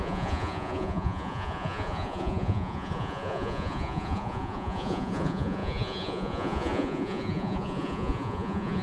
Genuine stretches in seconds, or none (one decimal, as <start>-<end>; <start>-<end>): none